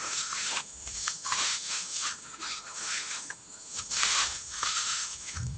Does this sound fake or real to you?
fake